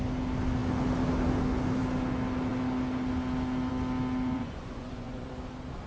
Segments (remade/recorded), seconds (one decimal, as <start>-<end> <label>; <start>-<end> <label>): 0.0-4.3 recorded; 4.3-5.3 remade; 5.3-5.9 recorded